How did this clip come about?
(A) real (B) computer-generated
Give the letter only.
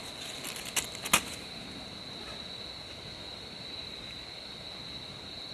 A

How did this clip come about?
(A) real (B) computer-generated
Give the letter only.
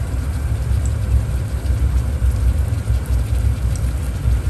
A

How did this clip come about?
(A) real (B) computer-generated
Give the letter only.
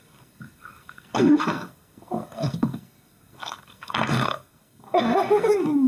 B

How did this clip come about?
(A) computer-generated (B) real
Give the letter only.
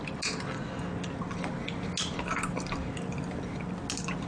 B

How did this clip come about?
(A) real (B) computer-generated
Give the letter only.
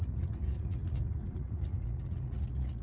B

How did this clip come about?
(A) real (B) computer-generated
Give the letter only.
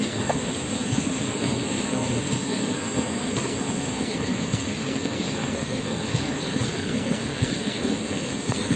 B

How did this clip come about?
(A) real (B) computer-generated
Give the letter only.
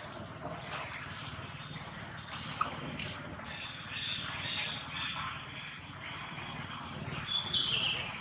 A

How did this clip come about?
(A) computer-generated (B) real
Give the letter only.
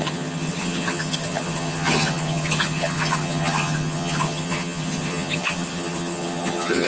A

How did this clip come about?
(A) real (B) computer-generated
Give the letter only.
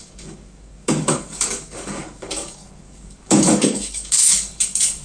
B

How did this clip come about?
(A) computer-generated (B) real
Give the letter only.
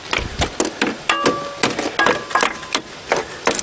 B